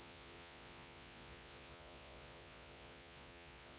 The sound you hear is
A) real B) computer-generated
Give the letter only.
B